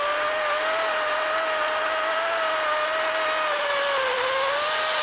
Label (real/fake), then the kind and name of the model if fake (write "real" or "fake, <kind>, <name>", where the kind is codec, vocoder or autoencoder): real